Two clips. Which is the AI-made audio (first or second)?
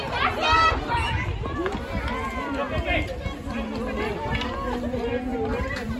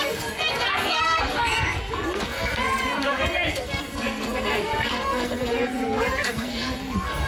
second